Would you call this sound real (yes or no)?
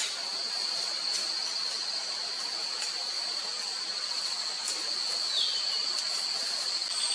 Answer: yes